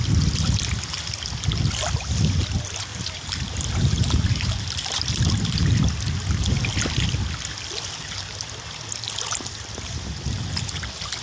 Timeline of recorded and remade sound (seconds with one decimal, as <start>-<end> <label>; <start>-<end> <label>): 0.0-2.9 recorded; 2.9-5.0 remade; 5.0-11.2 recorded